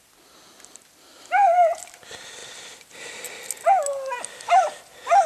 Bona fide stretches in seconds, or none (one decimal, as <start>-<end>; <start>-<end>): 0.0-5.3